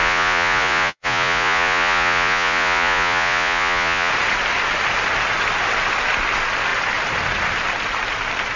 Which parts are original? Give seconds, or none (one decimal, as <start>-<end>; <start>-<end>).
4.1-8.6

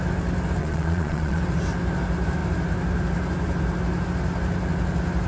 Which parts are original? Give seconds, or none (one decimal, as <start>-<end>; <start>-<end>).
0.0-0.6; 1.4-5.3

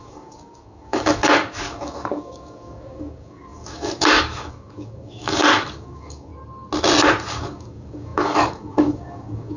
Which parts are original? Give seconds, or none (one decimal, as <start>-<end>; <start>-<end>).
6.3-7.3

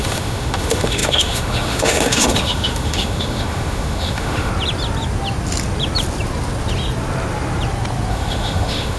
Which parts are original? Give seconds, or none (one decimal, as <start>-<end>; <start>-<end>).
4.5-8.1

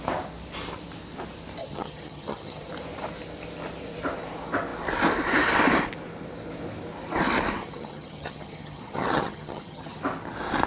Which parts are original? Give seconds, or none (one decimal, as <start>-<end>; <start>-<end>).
0.0-1.6; 2.7-7.6; 10.0-10.7

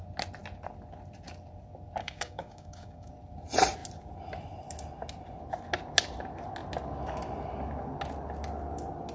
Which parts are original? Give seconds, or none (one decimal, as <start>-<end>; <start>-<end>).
0.0-2.0; 3.1-9.1

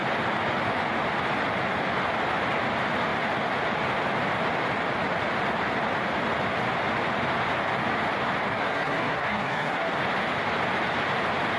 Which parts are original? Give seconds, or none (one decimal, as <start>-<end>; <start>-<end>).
0.0-8.5; 10.0-11.6

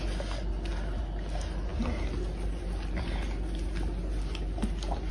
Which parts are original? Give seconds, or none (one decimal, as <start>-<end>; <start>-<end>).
0.0-5.1